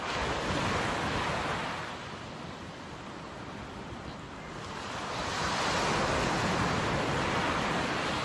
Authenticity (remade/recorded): recorded